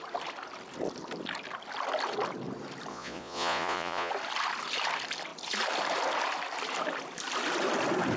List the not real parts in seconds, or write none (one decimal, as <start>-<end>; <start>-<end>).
2.9-4.1